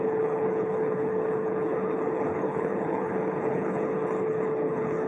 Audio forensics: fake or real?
fake